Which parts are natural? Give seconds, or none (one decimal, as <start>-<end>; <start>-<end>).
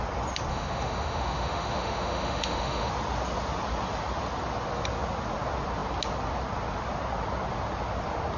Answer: 0.0-0.5; 2.9-8.4